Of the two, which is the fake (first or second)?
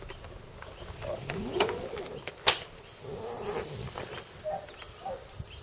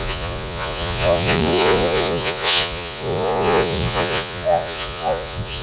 second